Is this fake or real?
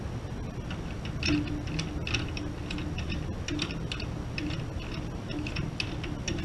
real